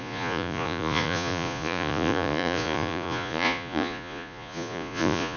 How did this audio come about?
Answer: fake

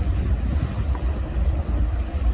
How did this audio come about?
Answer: real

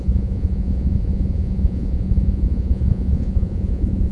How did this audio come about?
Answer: fake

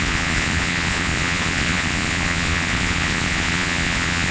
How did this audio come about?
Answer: fake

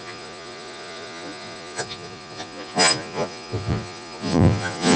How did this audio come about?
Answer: fake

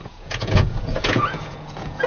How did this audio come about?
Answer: fake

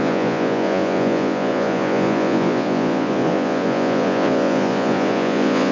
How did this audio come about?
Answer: fake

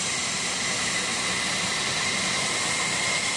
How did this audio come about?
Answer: real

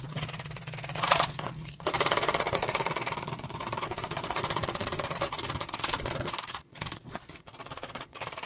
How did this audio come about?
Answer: fake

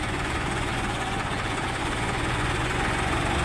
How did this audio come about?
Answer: fake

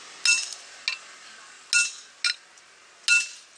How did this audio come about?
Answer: real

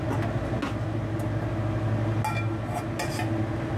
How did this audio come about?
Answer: real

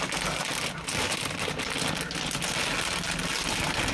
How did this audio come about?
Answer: real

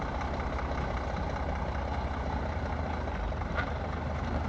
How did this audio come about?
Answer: real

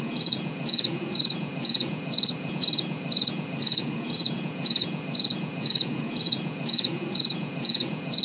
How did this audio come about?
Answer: fake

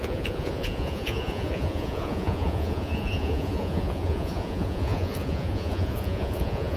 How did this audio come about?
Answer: fake